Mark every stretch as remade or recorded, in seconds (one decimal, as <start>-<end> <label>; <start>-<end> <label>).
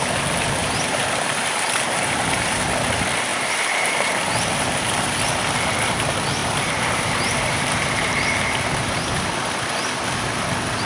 0.0-0.6 recorded; 0.6-2.6 remade; 2.6-3.3 recorded; 3.3-4.1 remade; 4.1-6.4 recorded; 6.4-8.1 remade; 8.1-8.8 recorded; 8.8-9.3 remade; 9.3-10.9 recorded